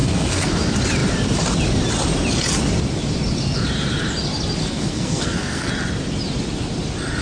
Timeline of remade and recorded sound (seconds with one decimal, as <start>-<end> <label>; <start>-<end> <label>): 0.0-0.5 remade; 0.5-4.6 recorded; 4.6-5.7 remade; 5.7-7.2 recorded